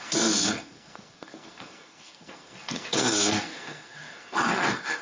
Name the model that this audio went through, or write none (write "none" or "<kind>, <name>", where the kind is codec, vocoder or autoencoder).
codec, SNAC